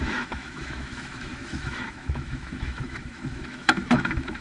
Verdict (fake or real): fake